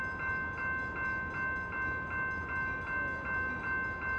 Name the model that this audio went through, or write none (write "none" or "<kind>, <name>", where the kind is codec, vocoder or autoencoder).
none